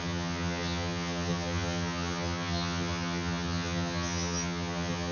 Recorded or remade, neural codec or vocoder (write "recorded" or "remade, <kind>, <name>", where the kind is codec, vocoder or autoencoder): remade, vocoder, HiFi-GAN